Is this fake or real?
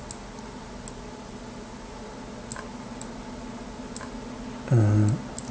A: real